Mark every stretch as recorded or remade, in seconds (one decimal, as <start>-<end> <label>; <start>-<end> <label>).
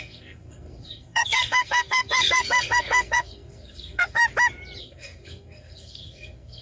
0.0-4.2 remade; 4.2-4.8 recorded; 4.8-6.6 remade